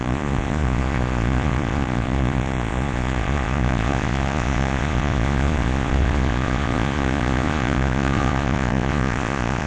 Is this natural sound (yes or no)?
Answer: no